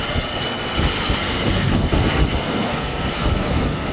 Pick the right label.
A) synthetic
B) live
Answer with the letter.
A